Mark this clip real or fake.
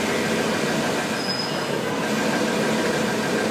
real